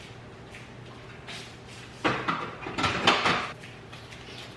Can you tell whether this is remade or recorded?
recorded